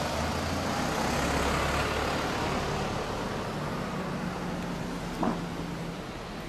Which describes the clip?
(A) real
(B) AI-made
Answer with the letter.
A